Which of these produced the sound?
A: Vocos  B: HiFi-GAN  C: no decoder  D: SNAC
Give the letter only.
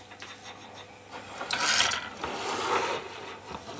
C